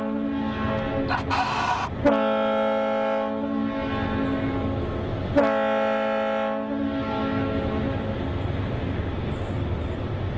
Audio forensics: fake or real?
real